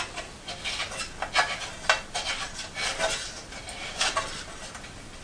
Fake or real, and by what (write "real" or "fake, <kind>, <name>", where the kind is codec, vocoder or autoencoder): real